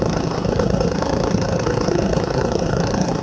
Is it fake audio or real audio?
fake